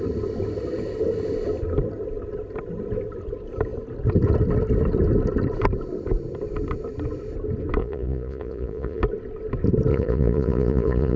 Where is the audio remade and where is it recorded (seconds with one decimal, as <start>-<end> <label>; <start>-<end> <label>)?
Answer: 0.0-7.8 recorded; 7.8-9.0 remade; 9.0-9.9 recorded; 9.9-11.2 remade